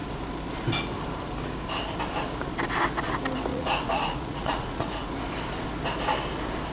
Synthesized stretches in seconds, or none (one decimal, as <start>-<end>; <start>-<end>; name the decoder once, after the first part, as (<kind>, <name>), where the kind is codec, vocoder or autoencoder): 3.5-5.1 (vocoder, Vocos)